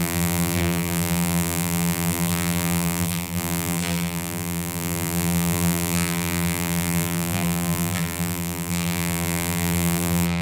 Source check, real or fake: fake